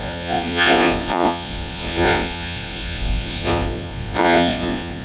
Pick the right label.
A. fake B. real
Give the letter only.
A